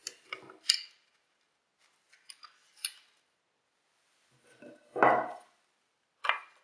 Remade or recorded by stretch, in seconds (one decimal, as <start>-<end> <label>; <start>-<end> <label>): 0.0-6.6 recorded